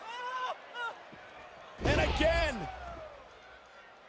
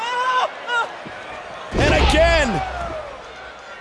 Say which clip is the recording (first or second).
second